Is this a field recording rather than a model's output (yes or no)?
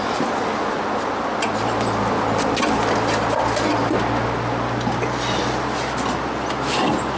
yes